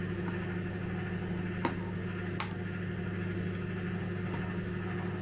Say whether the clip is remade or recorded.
recorded